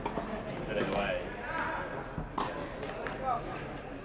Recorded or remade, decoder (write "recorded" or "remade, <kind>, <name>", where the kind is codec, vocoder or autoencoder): recorded